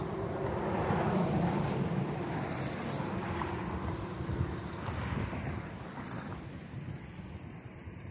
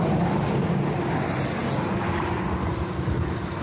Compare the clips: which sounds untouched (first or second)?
second